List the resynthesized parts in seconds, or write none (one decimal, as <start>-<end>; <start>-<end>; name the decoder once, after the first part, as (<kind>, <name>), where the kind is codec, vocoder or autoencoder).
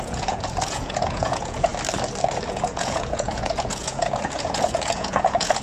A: 0.0-1.7 (vocoder, Vocos); 2.5-5.6